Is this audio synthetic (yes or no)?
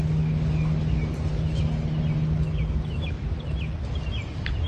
no